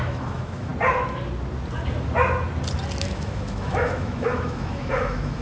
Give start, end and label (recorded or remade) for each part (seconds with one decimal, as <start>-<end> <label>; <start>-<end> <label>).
0.0-0.7 remade; 0.7-3.0 recorded; 3.0-5.4 remade